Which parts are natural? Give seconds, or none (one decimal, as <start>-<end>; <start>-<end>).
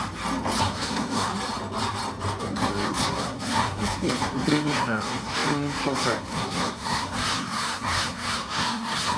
0.0-0.6; 1.3-2.4